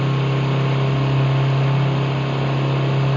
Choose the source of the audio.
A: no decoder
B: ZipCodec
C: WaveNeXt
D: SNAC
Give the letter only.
A